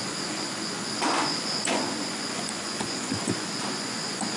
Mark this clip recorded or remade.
remade